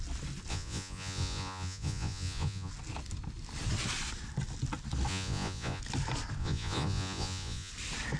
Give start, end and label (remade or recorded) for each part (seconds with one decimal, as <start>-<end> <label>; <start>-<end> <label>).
0.0-0.5 recorded; 0.5-2.7 remade; 2.7-5.1 recorded; 5.1-5.8 remade; 5.8-6.4 recorded; 6.4-7.7 remade; 7.7-8.2 recorded